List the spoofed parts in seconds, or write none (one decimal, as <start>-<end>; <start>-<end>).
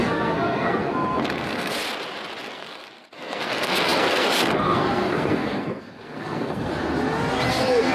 0.0-1.8; 2.4-6.7; 7.5-7.9